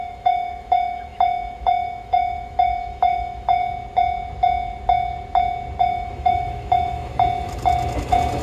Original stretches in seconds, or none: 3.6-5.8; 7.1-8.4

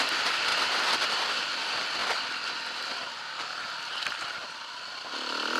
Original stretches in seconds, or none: 0.0-5.6